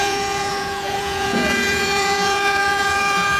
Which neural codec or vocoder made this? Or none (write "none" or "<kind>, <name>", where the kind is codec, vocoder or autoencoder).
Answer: vocoder, Vocos